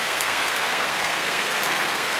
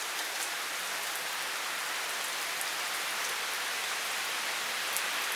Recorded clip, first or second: second